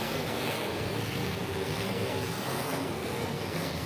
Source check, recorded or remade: remade